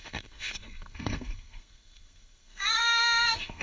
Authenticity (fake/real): fake